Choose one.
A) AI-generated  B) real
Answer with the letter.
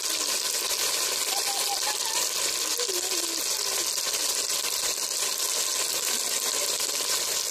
B